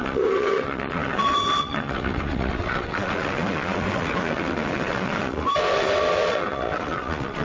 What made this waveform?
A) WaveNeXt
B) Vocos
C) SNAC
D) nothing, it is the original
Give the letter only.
A